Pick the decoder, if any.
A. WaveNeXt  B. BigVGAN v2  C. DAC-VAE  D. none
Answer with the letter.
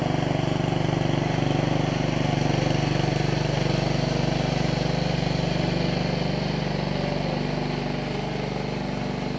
D